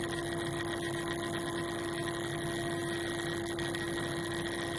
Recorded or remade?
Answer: recorded